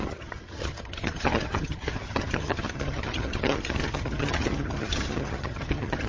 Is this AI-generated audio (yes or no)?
yes